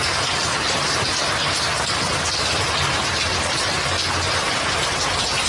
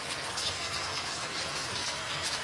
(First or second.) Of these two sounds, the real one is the first